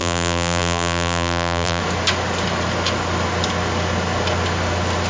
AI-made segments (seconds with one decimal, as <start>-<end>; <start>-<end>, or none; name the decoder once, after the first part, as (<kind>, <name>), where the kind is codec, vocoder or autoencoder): 0.0-1.8 (vocoder, BigVGAN v2)